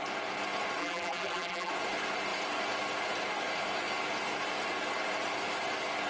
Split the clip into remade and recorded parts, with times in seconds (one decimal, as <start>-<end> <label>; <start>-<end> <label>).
0.0-0.8 recorded; 0.8-1.7 remade; 1.7-6.1 recorded